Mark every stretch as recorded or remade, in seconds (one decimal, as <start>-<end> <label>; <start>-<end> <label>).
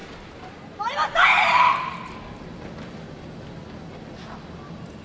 0.0-5.0 recorded